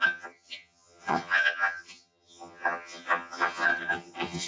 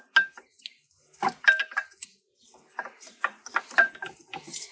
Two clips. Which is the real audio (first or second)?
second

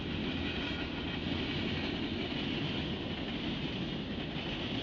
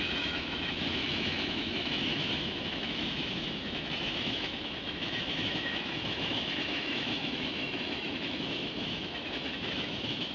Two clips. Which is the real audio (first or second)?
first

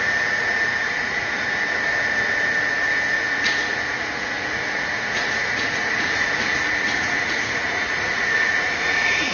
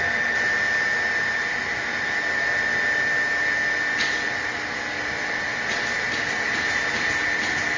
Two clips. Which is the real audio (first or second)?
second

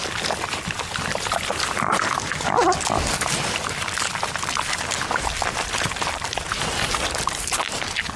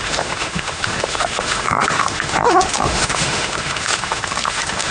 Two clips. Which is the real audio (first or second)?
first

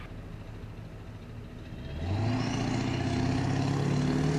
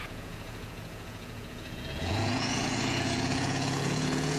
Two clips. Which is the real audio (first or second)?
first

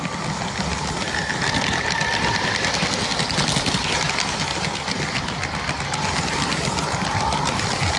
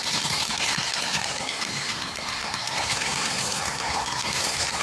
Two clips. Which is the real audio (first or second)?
first